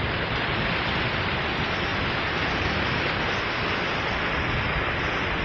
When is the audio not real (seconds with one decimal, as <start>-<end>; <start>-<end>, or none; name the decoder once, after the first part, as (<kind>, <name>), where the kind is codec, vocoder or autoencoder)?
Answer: none